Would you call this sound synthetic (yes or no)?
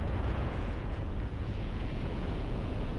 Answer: yes